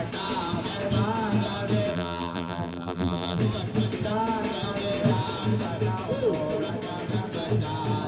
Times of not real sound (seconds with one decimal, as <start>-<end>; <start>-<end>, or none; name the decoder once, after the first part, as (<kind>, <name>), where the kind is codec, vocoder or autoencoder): 1.9-3.4 (vocoder, BigVGAN v2)

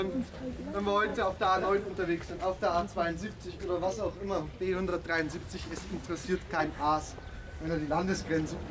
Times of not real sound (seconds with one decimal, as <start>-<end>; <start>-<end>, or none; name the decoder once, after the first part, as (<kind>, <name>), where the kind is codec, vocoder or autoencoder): 1.1-2.4 (vocoder, BigVGAN v2)

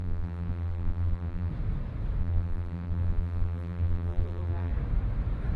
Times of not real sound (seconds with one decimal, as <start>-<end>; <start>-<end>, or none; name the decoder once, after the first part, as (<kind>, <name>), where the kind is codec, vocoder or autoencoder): 0.0-1.5 (vocoder, BigVGAN v2); 2.2-4.7

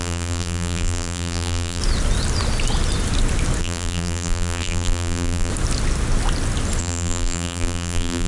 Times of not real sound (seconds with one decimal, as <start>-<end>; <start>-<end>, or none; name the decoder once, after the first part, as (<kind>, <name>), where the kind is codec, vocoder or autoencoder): 0.0-1.8 (vocoder, BigVGAN v2); 3.6-5.5; 6.8-8.3

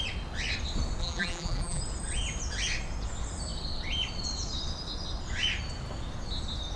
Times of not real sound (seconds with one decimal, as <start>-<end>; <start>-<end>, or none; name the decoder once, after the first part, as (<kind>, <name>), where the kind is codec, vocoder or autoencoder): 1.0-1.8 (vocoder, BigVGAN v2)

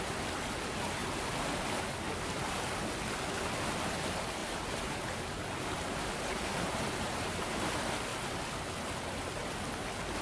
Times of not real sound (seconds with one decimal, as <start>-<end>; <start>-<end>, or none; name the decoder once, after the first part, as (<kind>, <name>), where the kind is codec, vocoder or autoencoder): 4.4-7.4 (vocoder, BigVGAN v2)

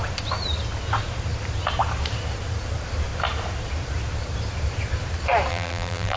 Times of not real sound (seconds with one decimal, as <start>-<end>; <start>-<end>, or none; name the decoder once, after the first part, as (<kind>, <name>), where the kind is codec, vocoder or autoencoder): 5.5-6.2 (vocoder, BigVGAN v2)

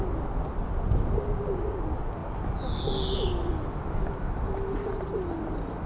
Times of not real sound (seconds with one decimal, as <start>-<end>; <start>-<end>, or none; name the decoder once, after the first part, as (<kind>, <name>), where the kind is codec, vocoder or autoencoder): none